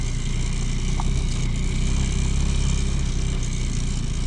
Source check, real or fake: real